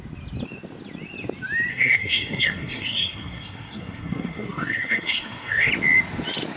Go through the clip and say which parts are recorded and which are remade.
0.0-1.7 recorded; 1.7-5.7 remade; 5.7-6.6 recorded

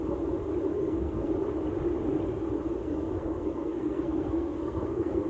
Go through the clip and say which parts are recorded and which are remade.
0.0-0.7 recorded; 0.7-1.3 remade; 1.3-2.8 recorded; 2.8-5.3 remade

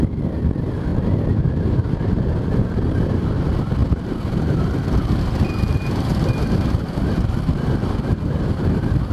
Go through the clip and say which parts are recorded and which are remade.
0.0-9.1 recorded

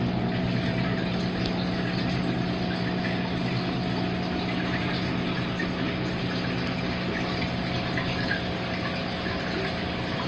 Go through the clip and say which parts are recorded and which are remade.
0.0-10.3 recorded

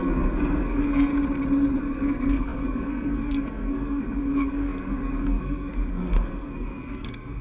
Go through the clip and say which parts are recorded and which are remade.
0.0-1.1 remade; 1.1-1.8 recorded; 1.8-7.4 remade

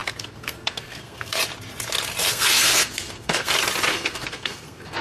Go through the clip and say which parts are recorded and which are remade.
0.0-1.4 remade; 1.4-2.2 recorded; 2.2-3.5 remade; 3.5-3.9 recorded; 3.9-5.0 remade

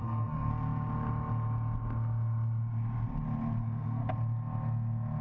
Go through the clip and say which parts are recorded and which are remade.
0.0-0.5 remade; 0.5-3.6 recorded; 3.6-4.0 remade; 4.0-5.2 recorded

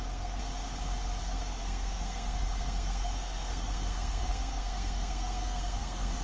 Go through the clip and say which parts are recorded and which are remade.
0.0-0.4 remade; 0.4-1.2 recorded; 1.2-6.2 remade